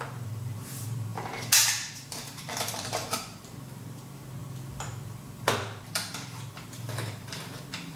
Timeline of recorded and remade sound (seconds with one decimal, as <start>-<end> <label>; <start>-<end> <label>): 0.0-8.0 remade